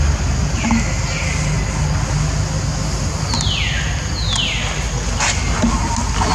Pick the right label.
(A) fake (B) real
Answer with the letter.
B